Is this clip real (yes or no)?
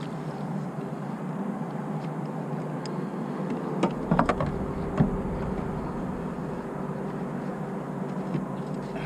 yes